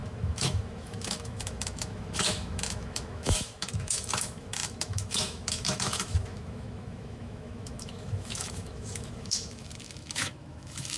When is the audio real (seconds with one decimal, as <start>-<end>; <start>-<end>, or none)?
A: none